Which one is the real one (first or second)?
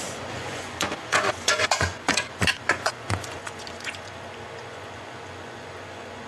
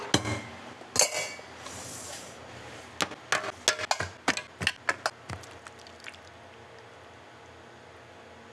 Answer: second